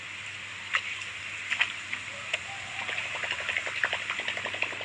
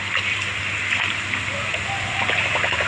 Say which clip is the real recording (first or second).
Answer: second